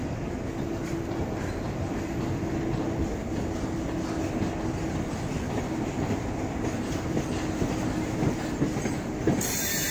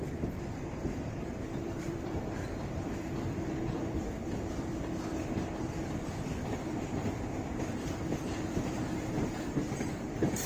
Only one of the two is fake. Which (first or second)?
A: second